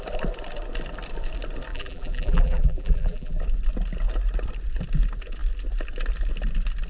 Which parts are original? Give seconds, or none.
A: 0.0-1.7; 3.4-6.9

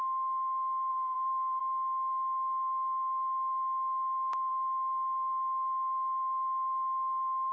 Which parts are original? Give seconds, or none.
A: 0.0-0.9; 1.6-7.5

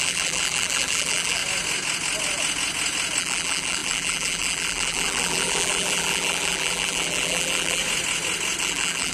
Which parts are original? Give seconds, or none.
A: 1.4-3.2; 7.8-8.6